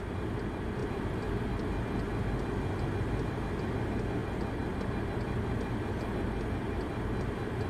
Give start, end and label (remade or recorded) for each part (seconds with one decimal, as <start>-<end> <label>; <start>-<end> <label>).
0.0-7.7 recorded